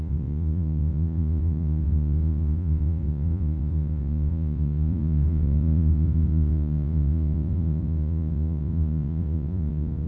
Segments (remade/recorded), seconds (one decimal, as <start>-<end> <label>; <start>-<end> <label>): 0.0-10.1 remade